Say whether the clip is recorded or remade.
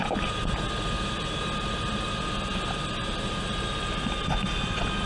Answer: recorded